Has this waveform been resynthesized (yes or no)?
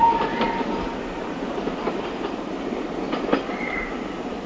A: no